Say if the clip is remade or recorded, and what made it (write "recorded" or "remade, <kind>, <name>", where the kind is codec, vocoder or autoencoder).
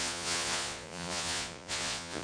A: remade, vocoder, Vocos